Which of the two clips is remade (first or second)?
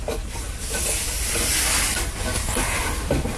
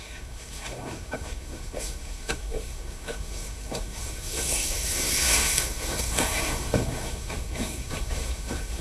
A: second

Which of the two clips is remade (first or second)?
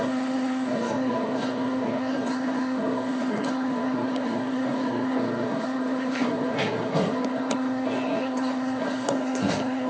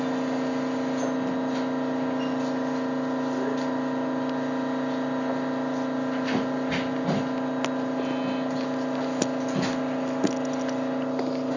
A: first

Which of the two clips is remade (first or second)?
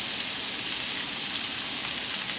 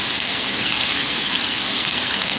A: second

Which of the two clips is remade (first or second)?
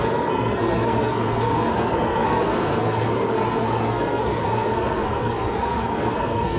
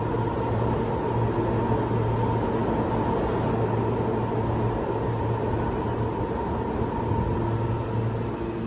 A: first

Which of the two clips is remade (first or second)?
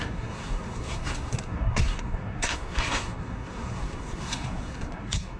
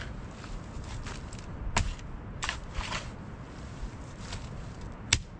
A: first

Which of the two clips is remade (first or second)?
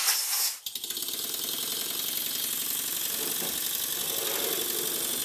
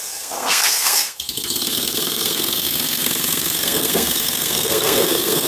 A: second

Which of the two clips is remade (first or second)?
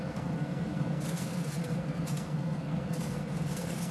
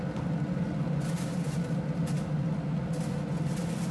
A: first